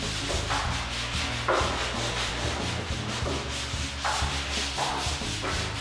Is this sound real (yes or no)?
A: yes